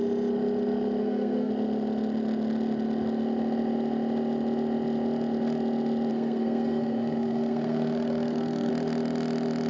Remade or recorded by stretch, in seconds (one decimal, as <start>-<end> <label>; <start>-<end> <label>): 0.0-1.0 recorded; 1.0-1.5 remade; 1.5-6.1 recorded; 6.1-8.7 remade; 8.7-9.7 recorded